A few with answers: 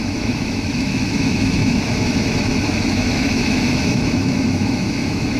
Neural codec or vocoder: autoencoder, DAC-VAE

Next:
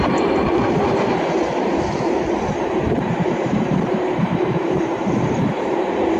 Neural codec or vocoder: vocoder, BigVGAN v2